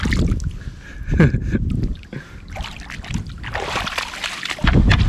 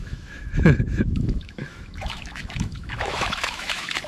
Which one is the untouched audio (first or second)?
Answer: first